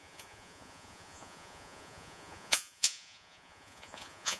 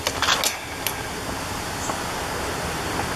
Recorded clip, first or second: second